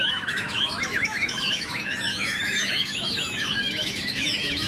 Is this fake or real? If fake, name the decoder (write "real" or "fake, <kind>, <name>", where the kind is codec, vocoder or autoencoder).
fake, autoencoder, DAC-VAE